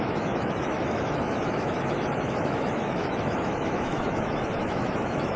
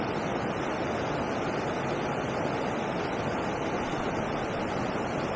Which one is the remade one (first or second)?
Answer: first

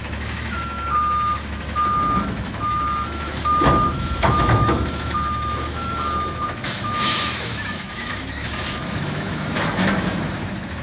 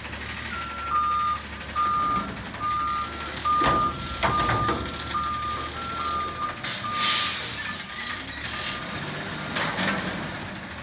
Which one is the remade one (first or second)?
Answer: first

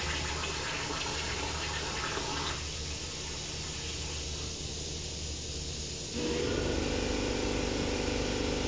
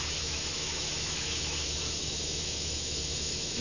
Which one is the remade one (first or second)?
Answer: second